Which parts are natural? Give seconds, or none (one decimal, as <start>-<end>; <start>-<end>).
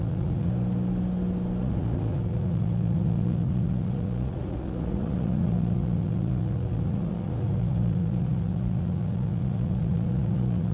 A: 0.5-1.6